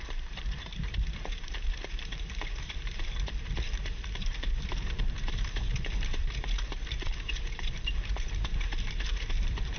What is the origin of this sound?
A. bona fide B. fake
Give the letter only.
B